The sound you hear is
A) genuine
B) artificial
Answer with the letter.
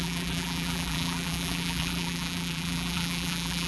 B